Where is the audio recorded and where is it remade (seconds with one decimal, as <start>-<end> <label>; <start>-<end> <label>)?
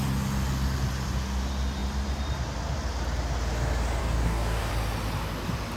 0.0-4.0 recorded; 4.0-4.7 remade; 4.7-5.8 recorded